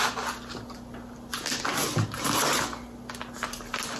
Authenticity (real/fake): real